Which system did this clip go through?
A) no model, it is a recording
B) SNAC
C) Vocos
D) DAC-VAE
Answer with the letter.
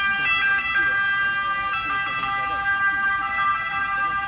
A